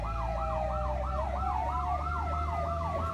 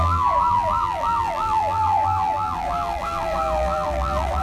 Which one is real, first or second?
first